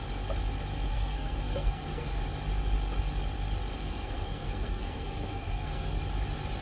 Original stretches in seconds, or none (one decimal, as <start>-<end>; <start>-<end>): 0.0-0.9; 2.2-3.7; 6.0-6.6